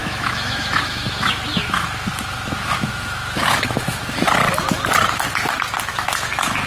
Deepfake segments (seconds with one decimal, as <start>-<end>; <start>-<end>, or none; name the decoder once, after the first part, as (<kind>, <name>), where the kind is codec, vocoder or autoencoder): 0.0-4.0 (autoencoder, DAC-VAE); 5.9-6.7